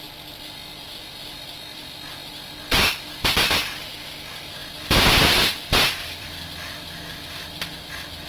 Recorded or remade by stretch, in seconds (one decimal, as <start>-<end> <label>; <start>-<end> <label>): 0.0-0.7 recorded; 0.7-2.1 remade; 2.1-4.6 recorded; 4.6-7.6 remade; 7.6-8.3 recorded